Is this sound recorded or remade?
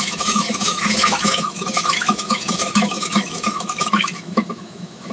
remade